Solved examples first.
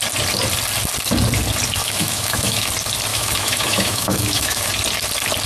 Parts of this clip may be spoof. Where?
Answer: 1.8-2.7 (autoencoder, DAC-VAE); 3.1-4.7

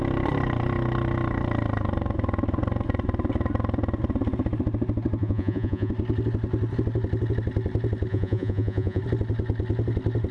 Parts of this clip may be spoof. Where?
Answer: 5.2-5.9 (vocoder, Vocos); 8.1-9.0

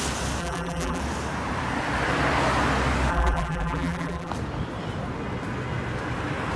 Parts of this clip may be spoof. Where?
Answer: 0.4-1.0 (vocoder, BigVGAN v2); 3.1-4.3

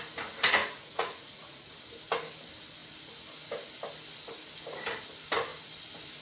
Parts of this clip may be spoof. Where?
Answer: 0.6-1.7 (vocoder, Vocos)

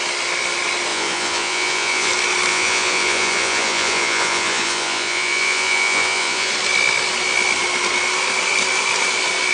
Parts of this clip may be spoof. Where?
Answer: 0.9-2.1 (vocoder, Vocos); 2.5-6.5

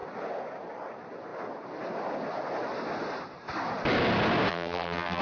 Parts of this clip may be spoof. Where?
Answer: 4.5-5.2 (vocoder, BigVGAN v2)

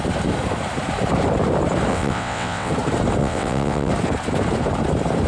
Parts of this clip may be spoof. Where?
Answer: 1.9-2.7 (vocoder, WaveNeXt); 3.2-3.9

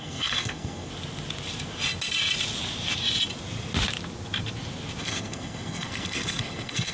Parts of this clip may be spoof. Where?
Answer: 0.0-0.9 (codec, SNAC); 5.0-6.9